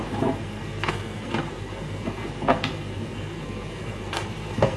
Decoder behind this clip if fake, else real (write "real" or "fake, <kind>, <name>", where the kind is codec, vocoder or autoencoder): fake, codec, SNAC